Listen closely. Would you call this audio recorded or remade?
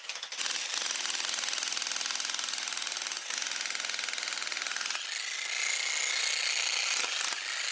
recorded